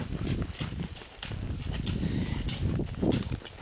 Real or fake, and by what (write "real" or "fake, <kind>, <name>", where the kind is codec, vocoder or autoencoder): real